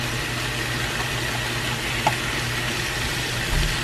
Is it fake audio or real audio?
real